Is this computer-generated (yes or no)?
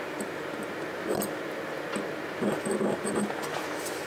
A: no